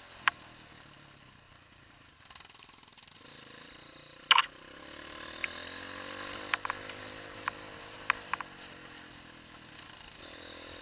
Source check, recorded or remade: recorded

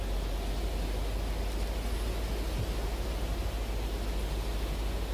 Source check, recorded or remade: recorded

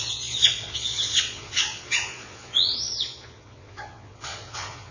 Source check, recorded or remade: remade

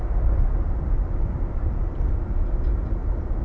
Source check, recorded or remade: recorded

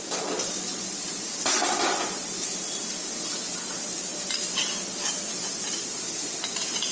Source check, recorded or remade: recorded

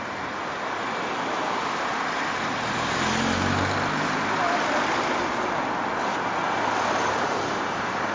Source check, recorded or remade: recorded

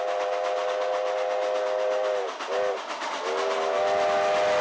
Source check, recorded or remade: recorded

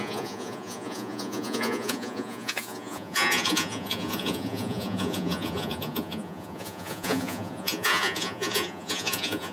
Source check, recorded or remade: remade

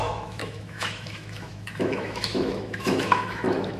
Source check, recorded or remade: remade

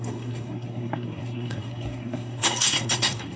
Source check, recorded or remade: remade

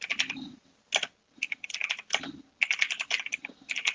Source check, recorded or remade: recorded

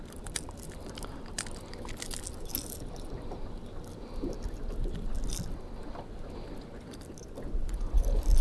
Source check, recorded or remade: recorded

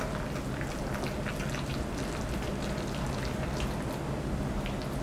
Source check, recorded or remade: recorded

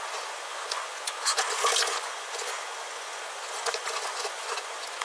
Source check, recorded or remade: remade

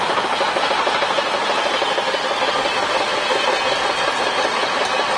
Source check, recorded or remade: recorded